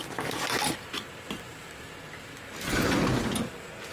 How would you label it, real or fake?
real